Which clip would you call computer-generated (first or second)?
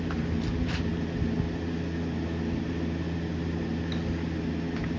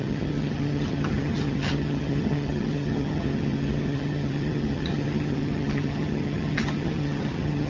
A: second